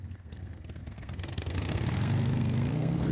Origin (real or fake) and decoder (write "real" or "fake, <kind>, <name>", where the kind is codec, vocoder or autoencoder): fake, codec, SNAC